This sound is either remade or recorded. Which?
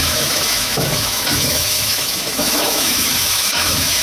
remade